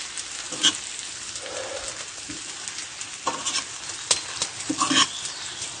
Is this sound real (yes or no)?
yes